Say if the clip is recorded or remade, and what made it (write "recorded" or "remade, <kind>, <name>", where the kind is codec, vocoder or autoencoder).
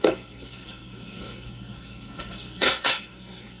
remade, codec, SNAC